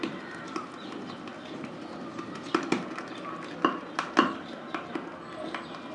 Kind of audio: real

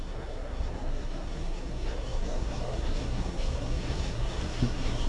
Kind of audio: fake